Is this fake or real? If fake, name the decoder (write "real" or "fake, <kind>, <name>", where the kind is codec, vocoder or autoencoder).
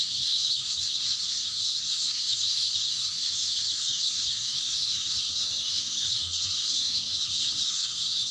fake, codec, SNAC